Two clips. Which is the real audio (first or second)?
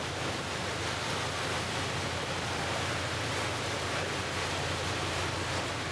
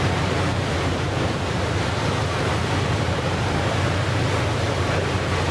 first